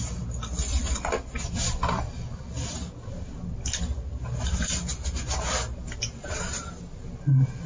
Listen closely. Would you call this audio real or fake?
real